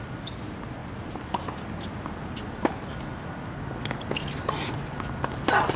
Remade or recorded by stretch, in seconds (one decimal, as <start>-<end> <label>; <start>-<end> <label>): 0.0-5.8 recorded